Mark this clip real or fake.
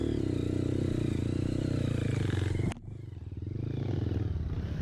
real